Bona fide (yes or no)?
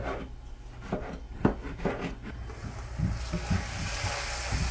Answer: yes